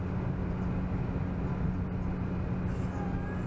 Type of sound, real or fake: real